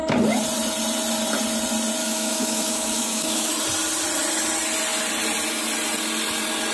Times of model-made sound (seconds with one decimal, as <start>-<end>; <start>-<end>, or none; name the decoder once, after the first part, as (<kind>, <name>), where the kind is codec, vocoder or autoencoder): 2.0-3.5 (autoencoder, DAC-VAE)